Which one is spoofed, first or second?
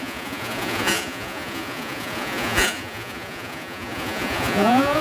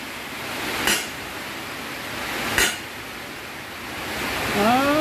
first